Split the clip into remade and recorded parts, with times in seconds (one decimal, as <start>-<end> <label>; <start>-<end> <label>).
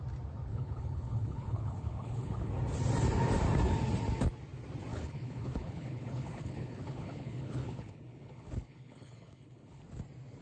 0.0-0.5 recorded; 0.5-2.5 remade; 2.5-4.9 recorded; 4.9-9.8 remade; 9.8-10.4 recorded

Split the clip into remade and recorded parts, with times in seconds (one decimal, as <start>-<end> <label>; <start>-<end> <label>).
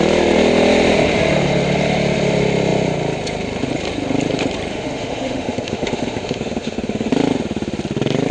0.0-4.7 recorded; 4.7-7.1 remade; 7.1-8.3 recorded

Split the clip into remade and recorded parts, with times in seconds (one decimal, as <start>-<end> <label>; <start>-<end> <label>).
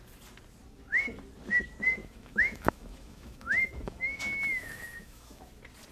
0.0-2.0 recorded; 2.0-5.5 remade; 5.5-5.9 recorded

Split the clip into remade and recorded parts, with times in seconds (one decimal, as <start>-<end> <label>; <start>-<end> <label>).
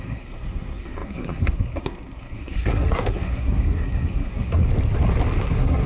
0.0-4.6 remade; 4.6-5.4 recorded; 5.4-5.9 remade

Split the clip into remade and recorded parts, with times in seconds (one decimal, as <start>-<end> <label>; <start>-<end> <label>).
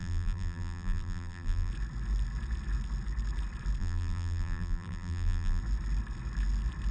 0.0-1.7 remade; 1.7-3.8 recorded; 3.8-5.6 remade; 5.6-6.9 recorded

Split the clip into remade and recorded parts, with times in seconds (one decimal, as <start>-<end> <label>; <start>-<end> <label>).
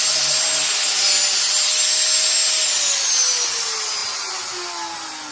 0.0-5.3 recorded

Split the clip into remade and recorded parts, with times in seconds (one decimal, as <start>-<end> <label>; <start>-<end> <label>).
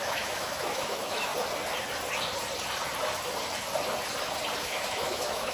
0.0-1.3 remade; 1.3-4.6 recorded; 4.6-5.5 remade